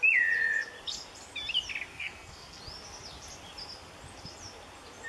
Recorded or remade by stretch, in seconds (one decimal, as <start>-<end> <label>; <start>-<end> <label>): 0.0-1.9 recorded; 1.9-2.6 remade; 2.6-5.1 recorded